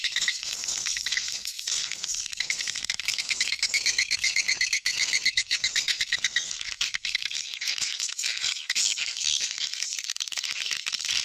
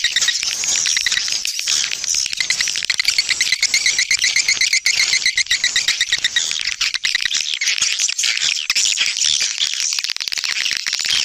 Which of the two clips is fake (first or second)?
first